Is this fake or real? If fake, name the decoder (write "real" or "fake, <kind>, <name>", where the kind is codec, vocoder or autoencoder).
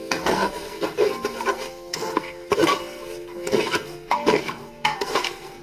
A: fake, codec, SNAC